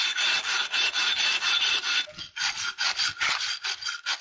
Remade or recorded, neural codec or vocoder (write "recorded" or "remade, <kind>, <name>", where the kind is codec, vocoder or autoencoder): recorded